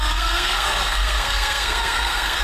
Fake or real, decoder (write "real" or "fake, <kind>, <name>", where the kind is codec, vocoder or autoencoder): fake, codec, SNAC